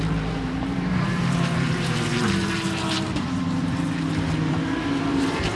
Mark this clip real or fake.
fake